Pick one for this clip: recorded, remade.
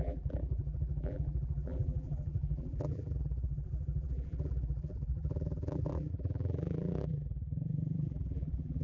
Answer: remade